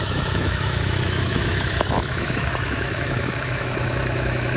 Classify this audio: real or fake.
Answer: fake